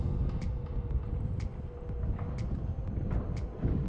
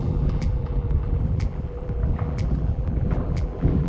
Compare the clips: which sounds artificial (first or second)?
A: second